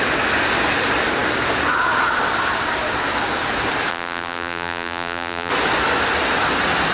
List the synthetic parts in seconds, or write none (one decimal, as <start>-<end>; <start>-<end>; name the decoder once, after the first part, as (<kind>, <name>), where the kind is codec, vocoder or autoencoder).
3.9-5.5 (vocoder, BigVGAN v2)